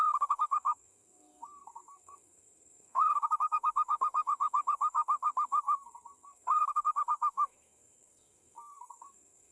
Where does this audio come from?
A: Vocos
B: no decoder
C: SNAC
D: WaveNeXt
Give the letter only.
C